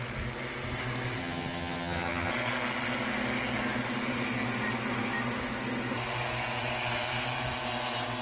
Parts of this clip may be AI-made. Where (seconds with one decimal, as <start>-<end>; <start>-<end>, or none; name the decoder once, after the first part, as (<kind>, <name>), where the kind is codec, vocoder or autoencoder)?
1.2-2.3 (vocoder, HiFi-GAN)